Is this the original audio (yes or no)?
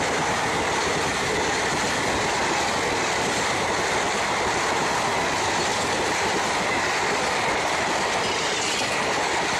yes